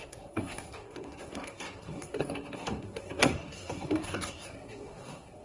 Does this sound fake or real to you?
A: fake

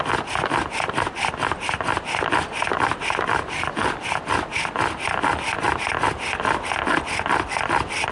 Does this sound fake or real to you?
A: real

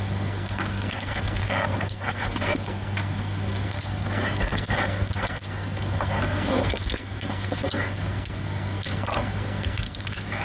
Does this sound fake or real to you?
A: fake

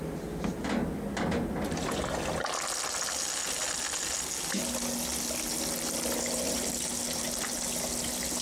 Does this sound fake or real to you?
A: real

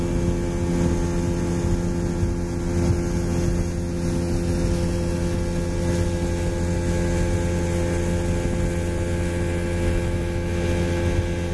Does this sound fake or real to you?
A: real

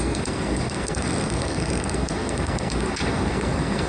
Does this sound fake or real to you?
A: fake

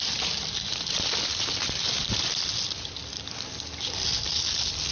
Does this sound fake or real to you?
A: real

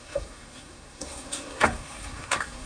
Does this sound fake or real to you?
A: fake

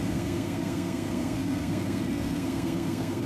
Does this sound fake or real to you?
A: fake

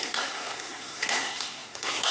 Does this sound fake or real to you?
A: fake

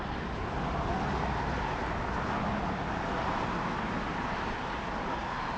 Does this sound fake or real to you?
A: real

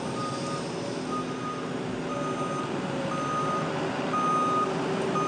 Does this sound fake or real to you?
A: real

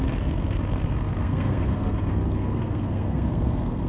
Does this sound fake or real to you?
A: fake